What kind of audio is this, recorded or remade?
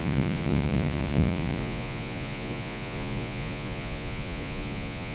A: remade